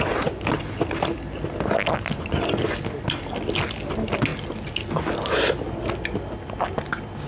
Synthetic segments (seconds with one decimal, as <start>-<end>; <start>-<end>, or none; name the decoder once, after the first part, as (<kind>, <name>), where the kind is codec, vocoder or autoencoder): none